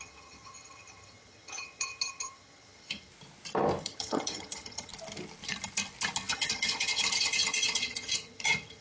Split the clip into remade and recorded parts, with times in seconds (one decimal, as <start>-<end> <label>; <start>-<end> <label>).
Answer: 0.0-3.1 remade; 3.1-3.8 recorded; 3.8-4.9 remade; 4.9-6.3 recorded; 6.3-8.8 remade